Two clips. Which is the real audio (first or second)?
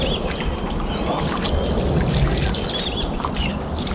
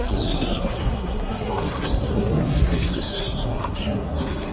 first